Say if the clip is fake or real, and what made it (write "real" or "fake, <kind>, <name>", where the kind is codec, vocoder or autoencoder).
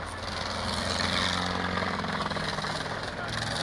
real